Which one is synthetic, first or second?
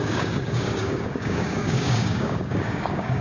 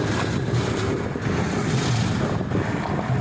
first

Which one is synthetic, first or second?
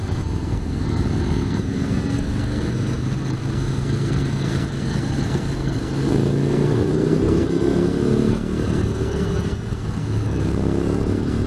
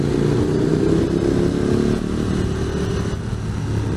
first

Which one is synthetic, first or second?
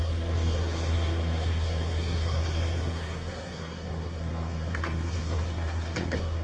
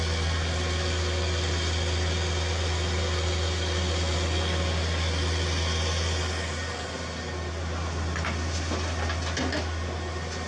first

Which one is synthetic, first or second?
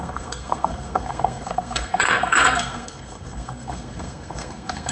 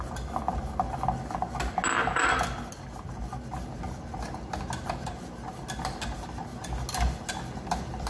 first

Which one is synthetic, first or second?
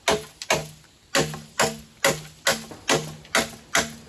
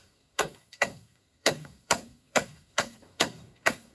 second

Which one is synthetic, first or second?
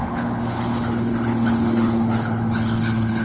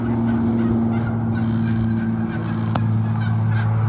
first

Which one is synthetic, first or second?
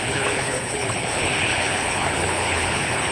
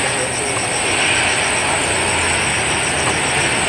first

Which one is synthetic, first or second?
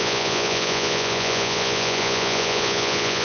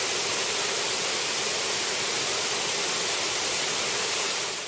first